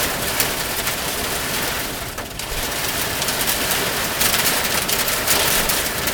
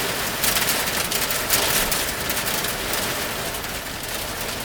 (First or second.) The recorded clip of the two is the second